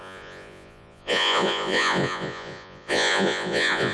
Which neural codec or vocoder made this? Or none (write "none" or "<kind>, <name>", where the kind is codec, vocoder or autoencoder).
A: vocoder, Vocos